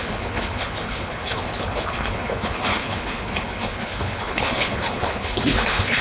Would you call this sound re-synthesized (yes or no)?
yes